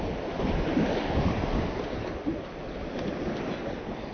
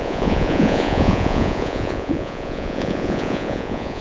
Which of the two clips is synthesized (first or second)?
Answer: second